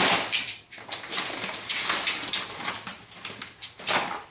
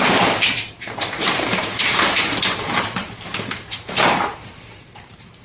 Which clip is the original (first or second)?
first